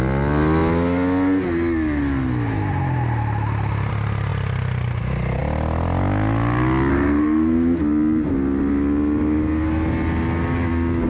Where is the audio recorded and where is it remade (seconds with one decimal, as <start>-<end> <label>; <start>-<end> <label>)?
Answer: 0.0-6.9 recorded; 6.9-7.8 remade; 7.8-11.1 recorded